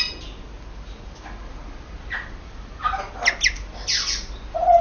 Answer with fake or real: real